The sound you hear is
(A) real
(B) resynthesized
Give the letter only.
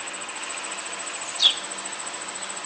A